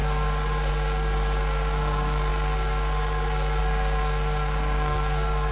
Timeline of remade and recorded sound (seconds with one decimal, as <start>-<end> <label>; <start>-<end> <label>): 0.0-5.5 remade